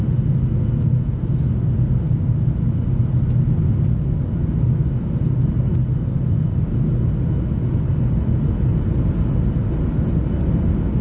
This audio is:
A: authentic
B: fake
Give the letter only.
A